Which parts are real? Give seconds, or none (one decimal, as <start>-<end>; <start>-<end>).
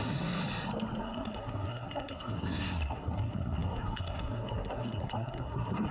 0.4-1.0